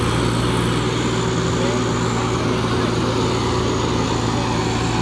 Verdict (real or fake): real